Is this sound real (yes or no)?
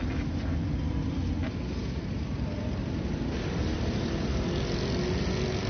yes